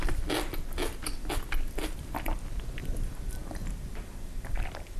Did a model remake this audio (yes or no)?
yes